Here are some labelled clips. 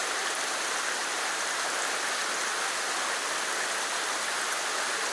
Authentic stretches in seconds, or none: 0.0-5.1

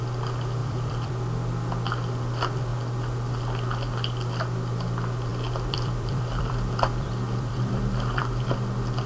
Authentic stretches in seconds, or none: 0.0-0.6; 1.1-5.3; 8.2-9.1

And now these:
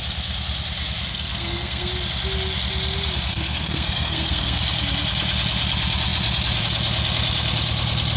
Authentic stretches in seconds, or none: 0.0-1.0; 1.9-3.3; 4.6-8.2

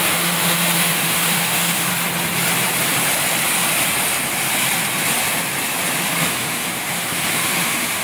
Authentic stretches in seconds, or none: 1.9-6.3